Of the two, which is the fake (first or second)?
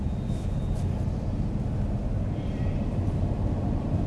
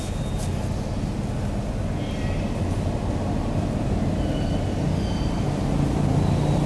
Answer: first